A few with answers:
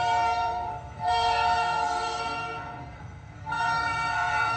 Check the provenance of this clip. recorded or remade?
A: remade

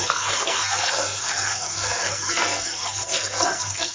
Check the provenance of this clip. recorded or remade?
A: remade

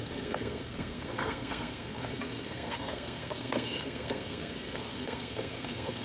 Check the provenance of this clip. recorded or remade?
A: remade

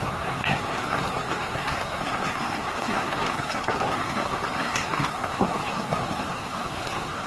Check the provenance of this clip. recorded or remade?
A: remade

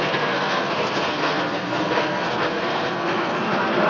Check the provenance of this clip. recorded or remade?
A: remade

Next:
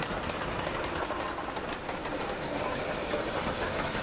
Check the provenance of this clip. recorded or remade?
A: recorded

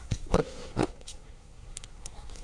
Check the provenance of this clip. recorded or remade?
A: remade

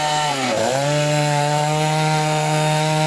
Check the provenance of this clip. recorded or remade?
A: remade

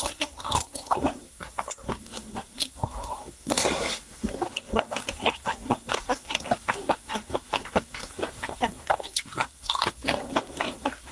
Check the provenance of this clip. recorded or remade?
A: remade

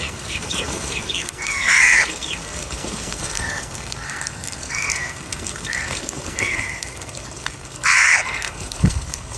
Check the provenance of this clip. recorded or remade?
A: remade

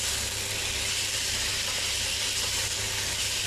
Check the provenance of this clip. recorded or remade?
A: recorded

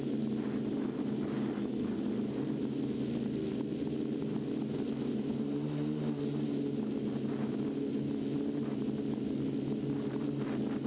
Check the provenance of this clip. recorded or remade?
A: recorded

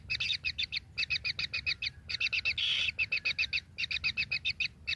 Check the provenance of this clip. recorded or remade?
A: recorded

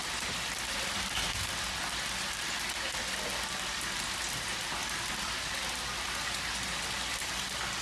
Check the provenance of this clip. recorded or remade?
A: recorded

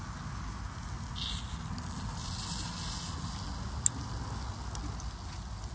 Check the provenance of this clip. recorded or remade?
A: recorded